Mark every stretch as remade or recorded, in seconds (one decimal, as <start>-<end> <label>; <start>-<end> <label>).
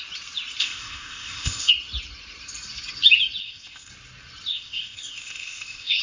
0.0-0.6 recorded; 0.6-1.7 remade; 1.7-3.4 recorded; 3.4-3.9 remade; 3.9-4.5 recorded; 4.5-6.0 remade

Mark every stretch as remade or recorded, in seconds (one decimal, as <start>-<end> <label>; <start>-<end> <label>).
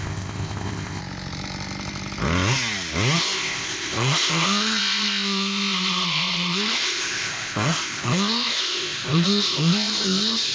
0.0-1.0 remade; 1.0-3.2 recorded; 3.2-10.5 remade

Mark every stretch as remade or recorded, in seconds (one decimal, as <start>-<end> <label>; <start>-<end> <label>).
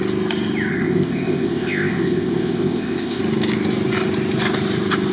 0.0-0.7 recorded; 0.7-3.2 remade; 3.2-5.1 recorded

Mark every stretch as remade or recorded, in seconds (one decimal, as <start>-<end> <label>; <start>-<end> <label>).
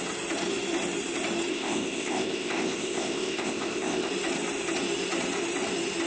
0.0-1.5 recorded; 1.5-4.1 remade; 4.1-6.1 recorded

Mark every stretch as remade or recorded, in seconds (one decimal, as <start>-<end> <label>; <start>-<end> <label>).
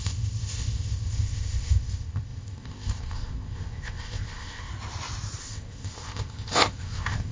0.0-4.7 remade; 4.7-5.4 recorded; 5.4-7.3 remade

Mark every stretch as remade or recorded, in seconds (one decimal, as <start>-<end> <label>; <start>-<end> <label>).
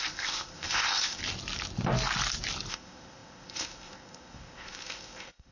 0.0-1.2 remade; 1.2-2.7 recorded; 2.7-5.5 remade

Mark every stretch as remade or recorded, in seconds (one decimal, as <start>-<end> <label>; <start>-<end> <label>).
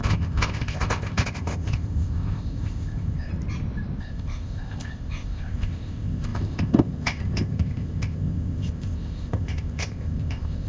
0.0-3.3 remade; 3.3-4.0 recorded; 4.0-10.7 remade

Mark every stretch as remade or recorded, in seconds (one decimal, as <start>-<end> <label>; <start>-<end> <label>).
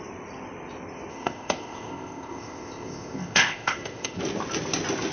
0.0-1.1 recorded; 1.1-4.2 remade; 4.2-5.1 recorded